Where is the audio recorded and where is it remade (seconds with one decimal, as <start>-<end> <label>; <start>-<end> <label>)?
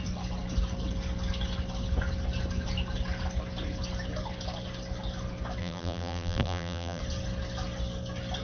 0.0-5.6 recorded; 5.6-7.0 remade; 7.0-8.4 recorded